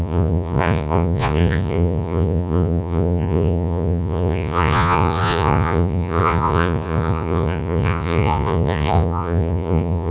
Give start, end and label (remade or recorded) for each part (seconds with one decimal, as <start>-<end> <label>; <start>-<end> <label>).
0.0-10.1 remade